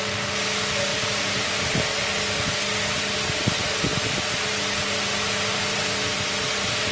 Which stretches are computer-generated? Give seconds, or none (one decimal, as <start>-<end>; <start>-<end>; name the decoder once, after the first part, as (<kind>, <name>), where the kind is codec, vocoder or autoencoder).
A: 0.9-1.5 (vocoder, BigVGAN v2)